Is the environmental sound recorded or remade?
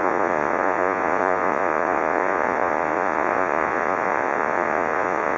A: remade